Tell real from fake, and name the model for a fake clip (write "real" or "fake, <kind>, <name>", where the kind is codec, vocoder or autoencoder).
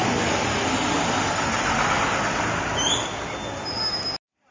real